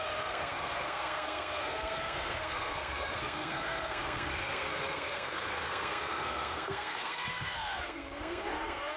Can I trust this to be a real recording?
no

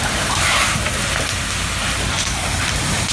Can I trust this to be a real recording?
yes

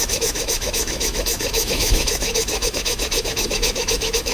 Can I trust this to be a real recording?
no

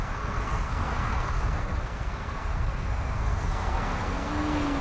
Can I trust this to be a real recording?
no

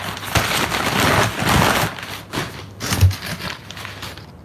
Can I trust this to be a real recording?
yes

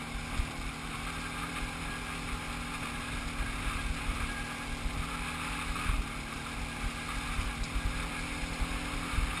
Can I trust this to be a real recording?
yes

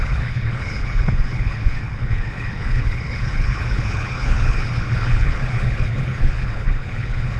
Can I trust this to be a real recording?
no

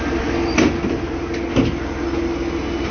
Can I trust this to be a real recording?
yes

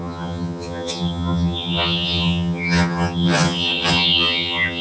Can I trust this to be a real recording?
no